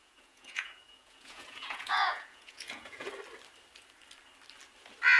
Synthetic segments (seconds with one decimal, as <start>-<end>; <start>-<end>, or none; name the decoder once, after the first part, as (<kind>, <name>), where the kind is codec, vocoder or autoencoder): 0.0-3.1 (vocoder, Vocos)